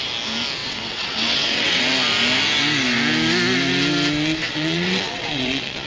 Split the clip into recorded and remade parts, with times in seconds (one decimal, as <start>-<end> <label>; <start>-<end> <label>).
0.0-0.6 recorded; 0.6-1.8 remade; 1.8-4.4 recorded; 4.4-5.9 remade